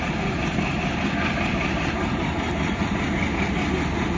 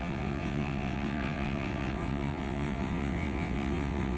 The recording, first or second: first